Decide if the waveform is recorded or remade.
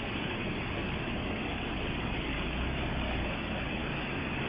remade